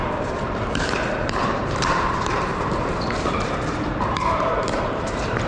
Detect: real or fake fake